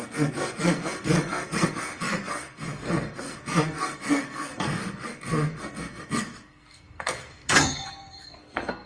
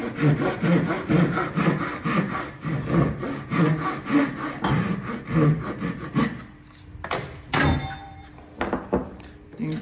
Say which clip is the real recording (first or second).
second